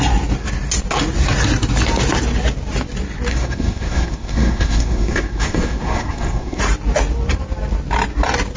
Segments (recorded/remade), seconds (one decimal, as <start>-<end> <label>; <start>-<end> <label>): 0.0-3.3 recorded; 3.3-6.6 remade; 6.6-8.6 recorded